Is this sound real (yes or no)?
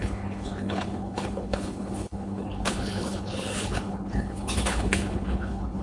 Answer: no